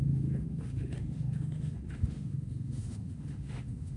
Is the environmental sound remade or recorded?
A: remade